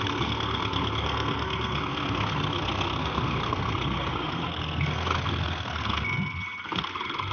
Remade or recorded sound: remade